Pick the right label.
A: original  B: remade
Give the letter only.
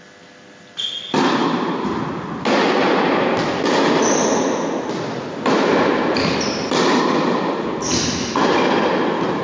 A